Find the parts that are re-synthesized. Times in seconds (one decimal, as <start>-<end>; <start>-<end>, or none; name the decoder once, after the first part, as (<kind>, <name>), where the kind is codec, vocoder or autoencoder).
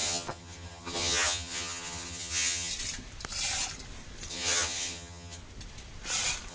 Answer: 0.0-2.7 (vocoder, HiFi-GAN); 4.3-5.4